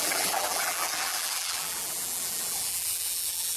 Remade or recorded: remade